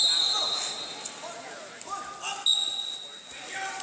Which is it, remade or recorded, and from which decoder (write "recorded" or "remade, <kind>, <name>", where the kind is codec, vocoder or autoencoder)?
recorded